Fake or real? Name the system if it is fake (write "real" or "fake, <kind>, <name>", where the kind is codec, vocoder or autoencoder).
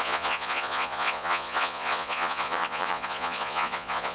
fake, vocoder, Vocos